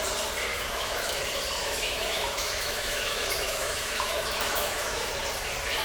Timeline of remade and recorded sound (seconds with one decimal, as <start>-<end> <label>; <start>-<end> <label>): 0.0-0.5 recorded; 0.5-1.2 remade; 1.2-1.6 recorded; 1.6-5.1 remade; 5.1-5.8 recorded